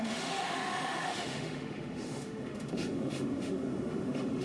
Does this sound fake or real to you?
fake